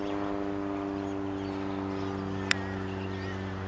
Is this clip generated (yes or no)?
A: no